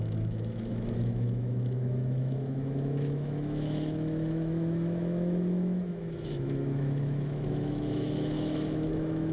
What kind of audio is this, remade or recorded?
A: remade